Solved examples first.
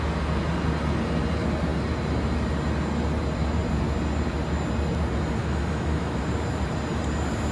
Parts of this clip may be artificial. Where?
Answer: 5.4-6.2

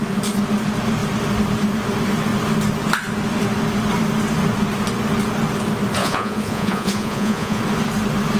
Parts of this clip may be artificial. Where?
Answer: 6.0-7.6

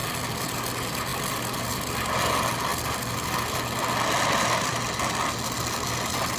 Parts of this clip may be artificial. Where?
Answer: none

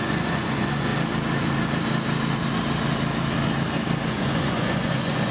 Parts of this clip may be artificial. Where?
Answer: 0.0-0.9; 4.1-5.3

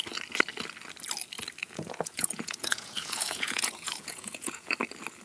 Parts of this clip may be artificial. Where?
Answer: 1.6-4.7

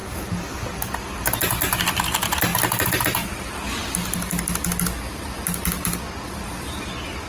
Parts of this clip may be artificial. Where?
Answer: none

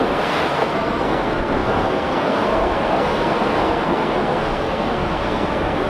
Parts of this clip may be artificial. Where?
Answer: 0.0-5.9